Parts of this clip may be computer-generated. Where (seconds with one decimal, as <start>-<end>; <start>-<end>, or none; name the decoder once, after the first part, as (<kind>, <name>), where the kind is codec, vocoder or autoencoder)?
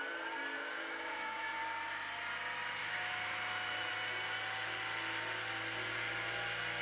0.6-1.6 (autoencoder, DAC-VAE); 2.8-3.9